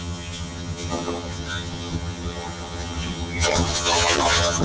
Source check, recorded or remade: remade